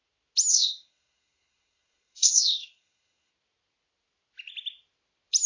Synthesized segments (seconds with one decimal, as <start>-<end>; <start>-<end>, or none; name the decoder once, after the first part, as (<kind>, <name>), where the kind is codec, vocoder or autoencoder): 0.5-3.3 (codec, SNAC)